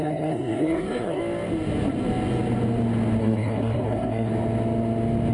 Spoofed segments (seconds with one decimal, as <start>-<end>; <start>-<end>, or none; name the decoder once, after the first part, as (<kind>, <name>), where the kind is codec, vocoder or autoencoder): 0.0-1.2 (codec, SNAC); 3.2-4.3